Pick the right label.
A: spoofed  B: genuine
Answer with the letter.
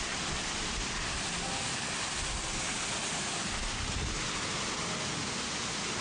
B